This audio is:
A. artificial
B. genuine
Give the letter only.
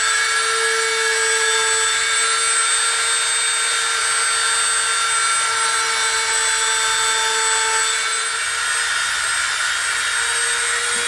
B